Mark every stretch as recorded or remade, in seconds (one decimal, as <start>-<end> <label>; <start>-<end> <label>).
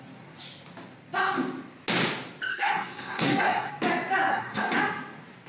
0.0-2.5 recorded; 2.5-3.7 remade; 3.7-4.3 recorded; 4.3-4.8 remade; 4.8-5.5 recorded